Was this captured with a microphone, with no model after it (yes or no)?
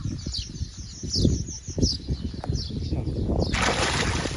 yes